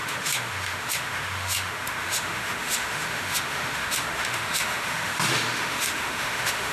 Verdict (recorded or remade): remade